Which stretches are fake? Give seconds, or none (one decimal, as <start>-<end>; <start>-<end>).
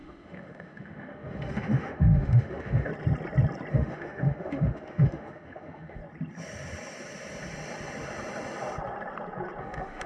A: 0.0-2.9; 3.7-6.0; 9.6-10.1